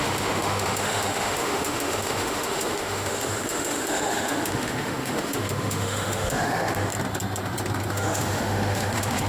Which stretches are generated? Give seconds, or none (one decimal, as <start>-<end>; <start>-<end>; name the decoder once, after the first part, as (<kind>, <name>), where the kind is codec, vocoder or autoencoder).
0.0-6.9 (autoencoder, DAC-VAE); 7.9-9.3